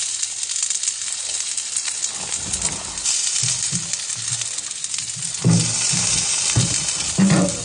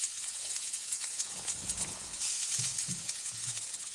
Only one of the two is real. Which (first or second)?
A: first